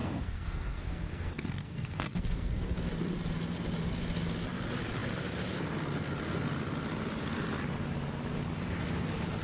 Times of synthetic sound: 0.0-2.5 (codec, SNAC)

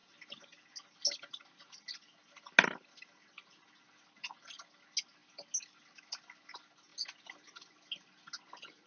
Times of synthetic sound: none

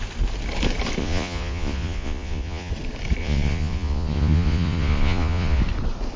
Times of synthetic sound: 1.0-2.7 (vocoder, Vocos); 3.2-5.6

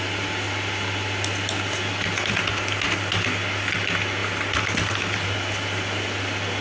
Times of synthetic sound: none

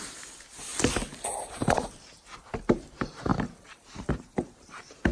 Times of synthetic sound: 0.0-0.7 (vocoder, BigVGAN v2); 1.4-5.1

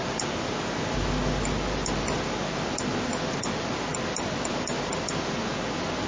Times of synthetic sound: none

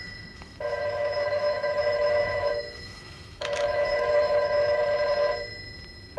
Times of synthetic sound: 0.0-4.8 (autoencoder, DAC-VAE)